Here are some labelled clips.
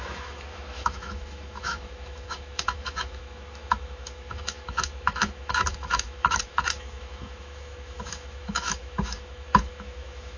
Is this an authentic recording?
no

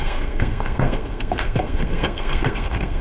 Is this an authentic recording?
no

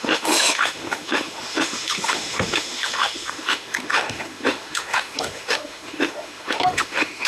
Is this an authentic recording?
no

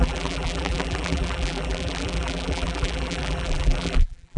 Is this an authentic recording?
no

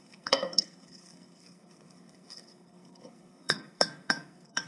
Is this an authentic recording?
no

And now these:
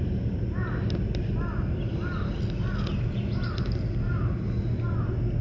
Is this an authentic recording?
yes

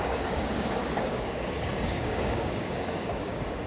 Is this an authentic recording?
no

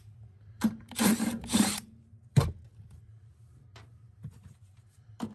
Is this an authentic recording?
no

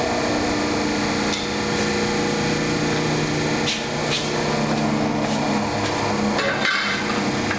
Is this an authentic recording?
yes